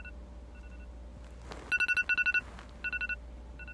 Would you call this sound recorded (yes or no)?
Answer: yes